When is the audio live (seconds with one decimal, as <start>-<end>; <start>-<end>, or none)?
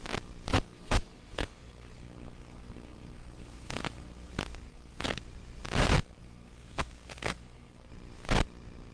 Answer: 0.0-0.5; 4.3-4.7; 5.2-6.0; 7.9-8.9